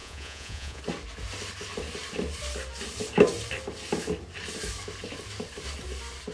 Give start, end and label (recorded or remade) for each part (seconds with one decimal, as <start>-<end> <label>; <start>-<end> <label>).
0.0-0.8 remade; 0.8-6.3 recorded